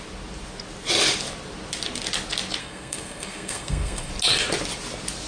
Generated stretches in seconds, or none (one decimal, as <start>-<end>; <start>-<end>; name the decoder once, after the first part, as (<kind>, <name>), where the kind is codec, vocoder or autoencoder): 2.6-4.1 (codec, SNAC)